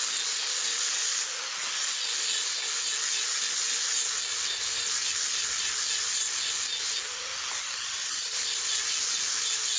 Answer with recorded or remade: recorded